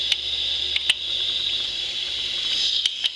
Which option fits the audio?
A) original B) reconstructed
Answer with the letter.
A